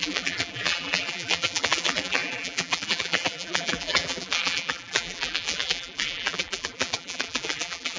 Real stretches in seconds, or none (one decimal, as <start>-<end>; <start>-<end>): none